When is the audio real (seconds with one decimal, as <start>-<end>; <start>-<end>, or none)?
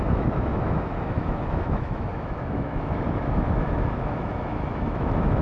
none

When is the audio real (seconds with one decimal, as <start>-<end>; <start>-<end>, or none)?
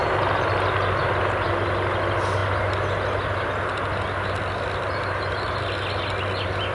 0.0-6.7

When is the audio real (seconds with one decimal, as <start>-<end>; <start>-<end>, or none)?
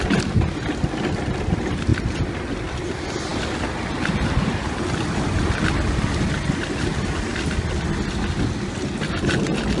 0.0-9.8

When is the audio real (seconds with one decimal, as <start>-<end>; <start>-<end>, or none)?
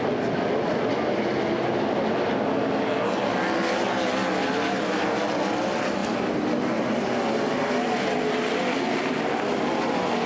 0.0-10.3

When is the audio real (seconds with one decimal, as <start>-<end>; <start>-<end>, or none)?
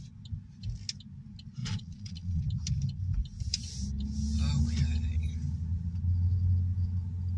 0.0-1.6; 2.4-7.4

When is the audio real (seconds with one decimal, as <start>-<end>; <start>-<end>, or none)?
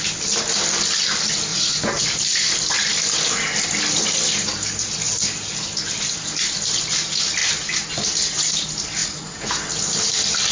0.0-1.5; 2.0-9.0; 9.5-10.5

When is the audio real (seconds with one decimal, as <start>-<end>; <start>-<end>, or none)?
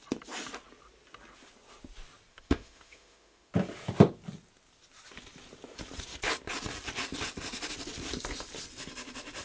0.0-2.3; 3.5-9.4